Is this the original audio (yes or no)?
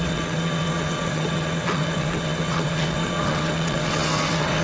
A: no